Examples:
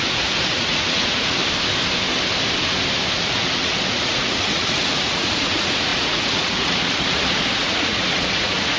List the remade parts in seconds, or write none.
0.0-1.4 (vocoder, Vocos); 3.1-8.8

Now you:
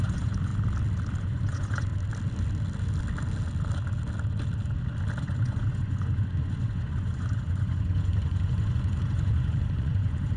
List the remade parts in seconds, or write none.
0.0-0.5 (vocoder, Vocos); 1.2-1.9; 5.2-10.4

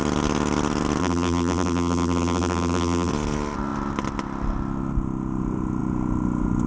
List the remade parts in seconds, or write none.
1.0-3.1 (vocoder, BigVGAN v2)

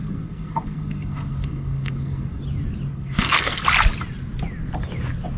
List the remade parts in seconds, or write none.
0.0-2.4 (codec, SNAC); 2.9-3.6

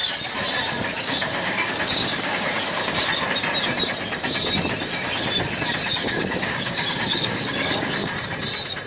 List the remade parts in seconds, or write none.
1.0-3.1 (codec, DAC); 5.9-8.0

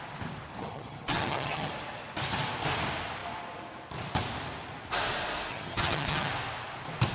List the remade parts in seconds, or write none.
0.6-1.7 (vocoder, HiFi-GAN); 5.5-6.3

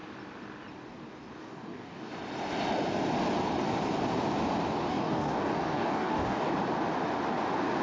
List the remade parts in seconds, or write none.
1.4-2.1 (codec, DAC); 4.9-6.5

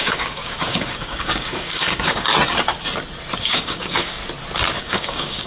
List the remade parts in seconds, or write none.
0.0-2.3 (codec, DAC); 3.4-4.2; 4.8-5.5